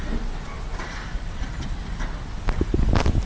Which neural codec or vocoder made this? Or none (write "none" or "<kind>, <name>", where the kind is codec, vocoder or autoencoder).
none